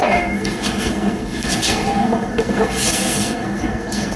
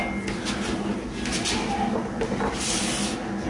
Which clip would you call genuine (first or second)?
second